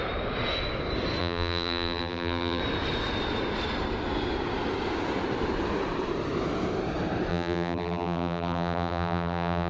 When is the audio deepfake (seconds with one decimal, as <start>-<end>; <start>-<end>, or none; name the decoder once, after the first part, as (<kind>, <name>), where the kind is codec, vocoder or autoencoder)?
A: 1.2-2.6 (vocoder, BigVGAN v2); 7.3-9.7